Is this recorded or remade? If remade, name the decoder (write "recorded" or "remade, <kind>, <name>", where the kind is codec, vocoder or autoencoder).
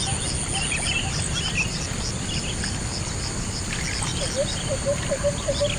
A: recorded